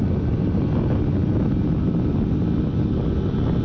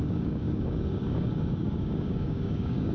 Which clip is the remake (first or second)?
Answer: second